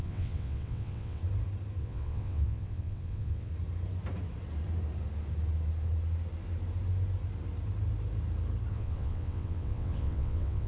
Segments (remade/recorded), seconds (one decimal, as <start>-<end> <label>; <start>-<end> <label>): 0.0-1.2 remade; 1.2-1.8 recorded; 1.8-3.5 remade; 3.5-8.7 recorded; 8.7-10.7 remade